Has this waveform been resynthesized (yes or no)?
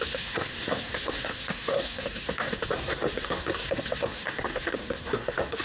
yes